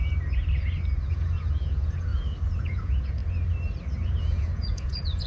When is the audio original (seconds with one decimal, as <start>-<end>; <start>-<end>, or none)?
0.0-1.1; 2.1-2.6; 3.2-4.2